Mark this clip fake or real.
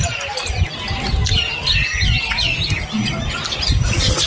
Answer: real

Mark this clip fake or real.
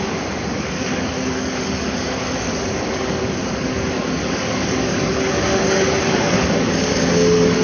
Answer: fake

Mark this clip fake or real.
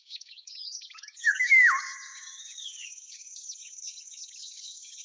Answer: fake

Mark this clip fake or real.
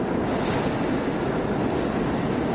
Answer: real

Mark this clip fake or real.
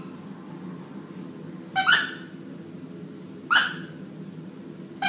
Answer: real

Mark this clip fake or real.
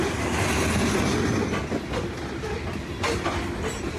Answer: real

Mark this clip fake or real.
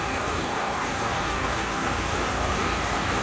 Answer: fake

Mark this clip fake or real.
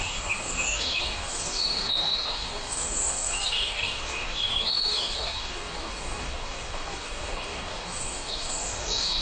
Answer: fake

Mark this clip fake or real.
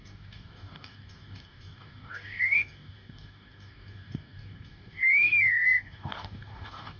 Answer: fake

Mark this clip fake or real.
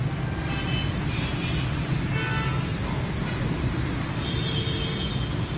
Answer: real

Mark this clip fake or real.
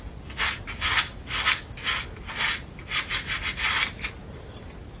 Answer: real